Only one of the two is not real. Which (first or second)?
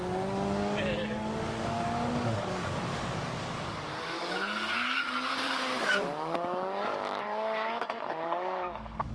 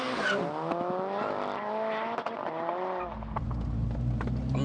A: first